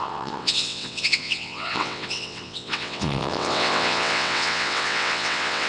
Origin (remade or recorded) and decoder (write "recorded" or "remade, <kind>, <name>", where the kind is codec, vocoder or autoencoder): remade, vocoder, WaveNeXt